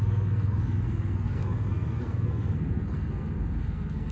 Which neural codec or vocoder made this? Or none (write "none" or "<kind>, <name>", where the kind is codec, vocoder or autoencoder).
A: codec, SNAC